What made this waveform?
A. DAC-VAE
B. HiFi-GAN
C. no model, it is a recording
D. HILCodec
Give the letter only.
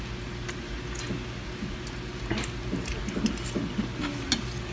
C